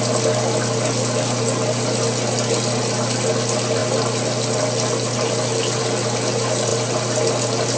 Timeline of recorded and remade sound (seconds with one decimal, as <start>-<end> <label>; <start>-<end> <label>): 0.0-7.8 recorded